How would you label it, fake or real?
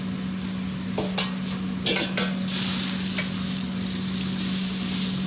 real